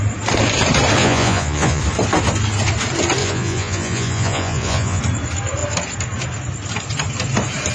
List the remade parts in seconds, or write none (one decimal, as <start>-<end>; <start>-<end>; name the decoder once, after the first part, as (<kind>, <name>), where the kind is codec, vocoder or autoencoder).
1.0-1.8 (vocoder, Vocos); 3.2-5.0